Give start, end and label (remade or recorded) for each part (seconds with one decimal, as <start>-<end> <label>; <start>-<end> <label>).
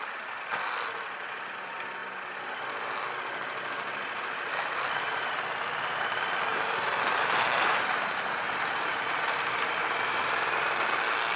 0.0-6.5 recorded; 6.5-10.3 remade; 10.3-11.4 recorded